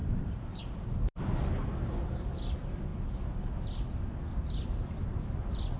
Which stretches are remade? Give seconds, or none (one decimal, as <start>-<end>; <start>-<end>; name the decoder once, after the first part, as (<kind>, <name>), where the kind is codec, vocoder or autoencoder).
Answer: none